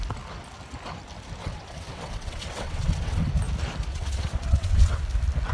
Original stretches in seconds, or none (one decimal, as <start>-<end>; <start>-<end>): 0.0-1.4; 3.3-3.9; 5.0-5.5